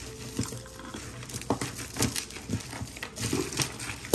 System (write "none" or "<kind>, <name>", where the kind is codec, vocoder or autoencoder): none